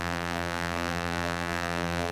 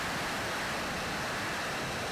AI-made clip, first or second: first